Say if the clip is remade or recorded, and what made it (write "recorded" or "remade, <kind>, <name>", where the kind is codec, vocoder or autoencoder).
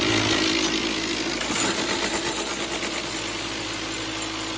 recorded